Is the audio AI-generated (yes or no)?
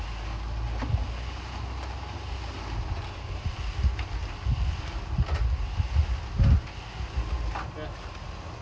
no